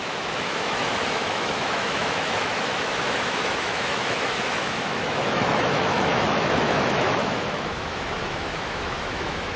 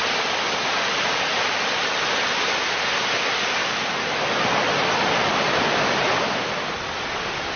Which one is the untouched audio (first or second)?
second